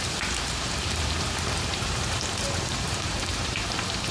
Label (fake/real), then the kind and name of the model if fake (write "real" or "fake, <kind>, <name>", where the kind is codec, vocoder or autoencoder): fake, vocoder, BigVGAN v2